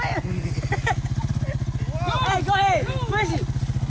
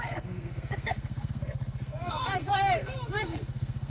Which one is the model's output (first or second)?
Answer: second